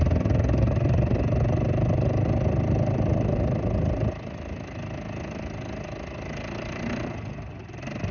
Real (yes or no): yes